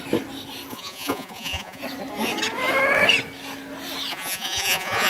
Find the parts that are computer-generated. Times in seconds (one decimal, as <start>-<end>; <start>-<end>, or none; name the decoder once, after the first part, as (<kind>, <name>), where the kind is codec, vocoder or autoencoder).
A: 0.7-1.8 (vocoder, Vocos); 4.1-5.1